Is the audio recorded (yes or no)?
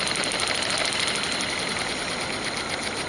yes